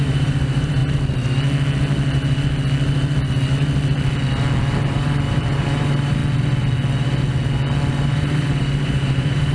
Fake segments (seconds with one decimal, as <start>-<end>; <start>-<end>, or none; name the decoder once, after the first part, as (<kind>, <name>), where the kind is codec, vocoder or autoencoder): 0.0-0.8 (vocoder, BigVGAN v2); 4.8-6.2; 7.9-9.5